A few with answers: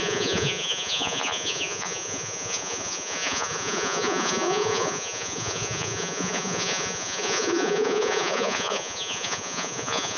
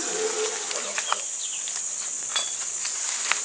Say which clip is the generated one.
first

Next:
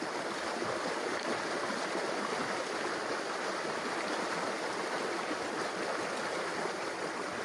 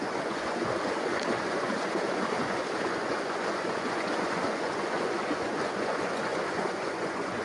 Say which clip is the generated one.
second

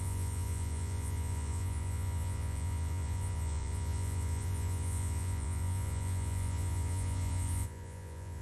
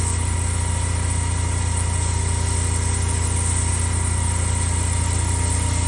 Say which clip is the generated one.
first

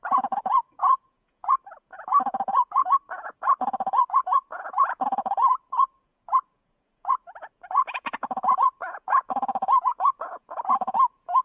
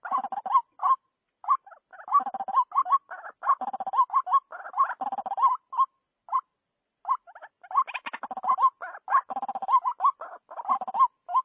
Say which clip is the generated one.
first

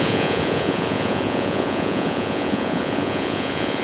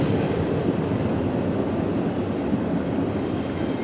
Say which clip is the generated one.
first